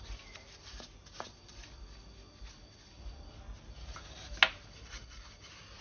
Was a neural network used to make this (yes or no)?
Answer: no